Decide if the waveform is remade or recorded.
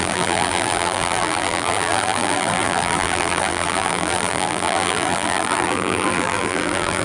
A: remade